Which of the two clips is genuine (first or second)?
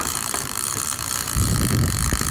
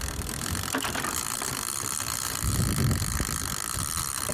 second